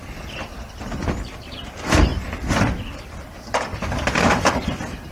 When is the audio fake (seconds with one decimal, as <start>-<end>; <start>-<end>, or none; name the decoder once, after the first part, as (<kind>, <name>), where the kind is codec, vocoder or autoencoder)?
2.1-3.1 (vocoder, BigVGAN v2); 3.7-4.5

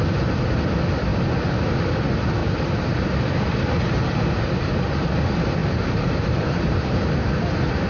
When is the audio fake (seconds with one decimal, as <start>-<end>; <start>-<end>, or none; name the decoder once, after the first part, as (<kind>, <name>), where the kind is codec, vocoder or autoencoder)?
2.4-4.3 (vocoder, BigVGAN v2); 5.6-7.0

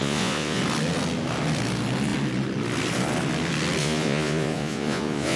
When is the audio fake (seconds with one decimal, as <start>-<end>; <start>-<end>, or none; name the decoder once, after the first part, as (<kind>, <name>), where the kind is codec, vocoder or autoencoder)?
0.0-0.6 (vocoder, Vocos); 3.8-5.4